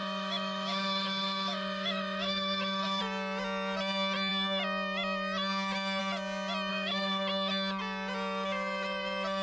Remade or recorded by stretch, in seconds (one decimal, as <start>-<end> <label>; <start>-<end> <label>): 0.0-3.0 remade; 3.0-6.7 recorded; 6.7-7.2 remade; 7.2-9.4 recorded